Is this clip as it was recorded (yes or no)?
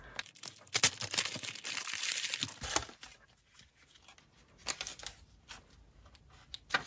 yes